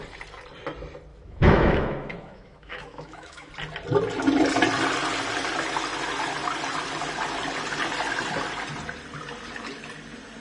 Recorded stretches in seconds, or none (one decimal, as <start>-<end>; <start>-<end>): 0.0-1.1; 3.5-10.4